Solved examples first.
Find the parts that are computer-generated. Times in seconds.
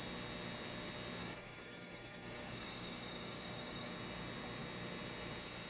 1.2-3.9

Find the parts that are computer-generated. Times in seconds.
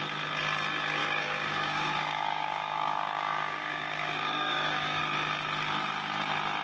1.0-5.0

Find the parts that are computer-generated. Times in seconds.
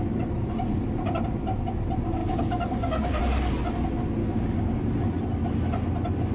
2.2-3.2; 4.2-4.8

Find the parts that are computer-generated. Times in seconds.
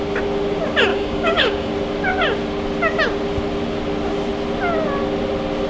0.9-1.7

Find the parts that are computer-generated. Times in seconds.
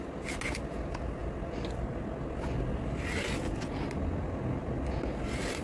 none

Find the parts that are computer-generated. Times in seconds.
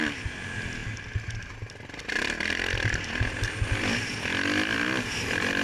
none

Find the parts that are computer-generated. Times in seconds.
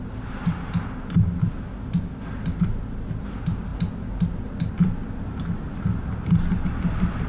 none